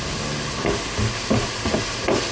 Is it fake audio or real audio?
real